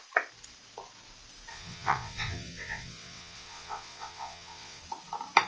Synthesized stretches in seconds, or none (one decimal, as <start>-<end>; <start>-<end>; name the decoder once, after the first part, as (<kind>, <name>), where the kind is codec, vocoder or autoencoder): 1.5-4.8 (vocoder, WaveNeXt)